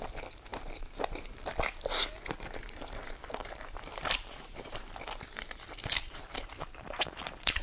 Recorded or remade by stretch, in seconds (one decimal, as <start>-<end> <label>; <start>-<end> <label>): 0.0-0.5 recorded; 0.5-1.5 remade; 1.5-2.6 recorded; 2.6-7.6 remade